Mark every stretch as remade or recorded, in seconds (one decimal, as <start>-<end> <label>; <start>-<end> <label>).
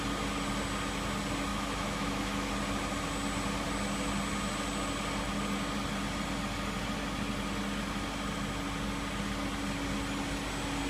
0.0-1.5 recorded; 1.5-2.5 remade; 2.5-10.9 recorded